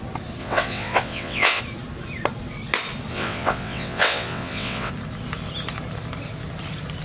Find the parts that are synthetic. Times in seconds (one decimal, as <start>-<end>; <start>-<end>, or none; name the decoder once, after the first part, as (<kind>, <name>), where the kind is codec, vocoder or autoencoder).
0.4-1.6 (vocoder, WaveNeXt); 3.1-4.9